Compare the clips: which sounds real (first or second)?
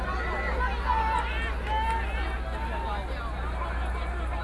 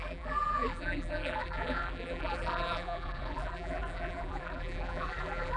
first